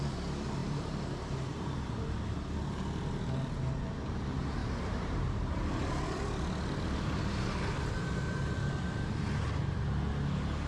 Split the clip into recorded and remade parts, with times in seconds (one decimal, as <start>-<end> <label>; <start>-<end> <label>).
0.0-0.6 recorded; 0.6-1.6 remade; 1.6-4.6 recorded; 4.6-6.2 remade; 6.2-10.7 recorded